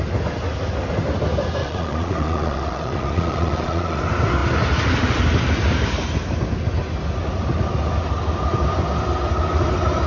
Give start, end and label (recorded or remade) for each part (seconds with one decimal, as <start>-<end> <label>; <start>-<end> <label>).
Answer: 0.0-1.6 recorded; 1.6-4.0 remade; 4.0-10.1 recorded